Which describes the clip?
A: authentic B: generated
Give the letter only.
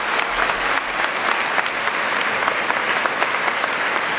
A